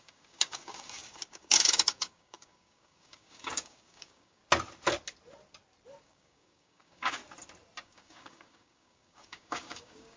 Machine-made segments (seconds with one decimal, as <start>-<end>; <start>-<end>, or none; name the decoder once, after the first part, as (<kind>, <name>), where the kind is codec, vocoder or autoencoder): 0.0-4.4 (codec, DAC); 6.0-7.2; 7.8-10.2